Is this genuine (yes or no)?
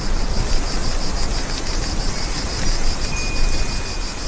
yes